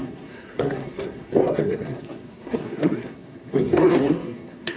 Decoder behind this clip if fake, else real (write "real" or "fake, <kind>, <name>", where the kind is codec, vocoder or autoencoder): fake, codec, SNAC